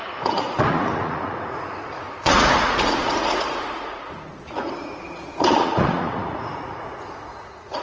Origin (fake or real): fake